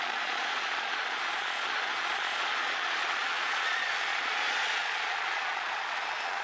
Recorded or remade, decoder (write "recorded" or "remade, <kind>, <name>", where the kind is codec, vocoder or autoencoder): remade, vocoder, Vocos